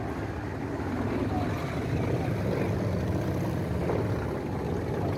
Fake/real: real